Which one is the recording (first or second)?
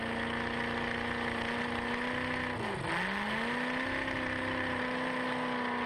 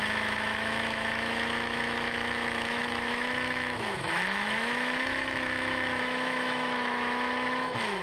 first